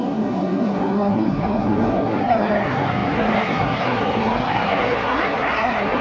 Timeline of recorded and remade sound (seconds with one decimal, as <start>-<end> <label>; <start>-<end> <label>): 0.0-6.0 remade